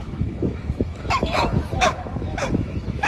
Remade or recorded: remade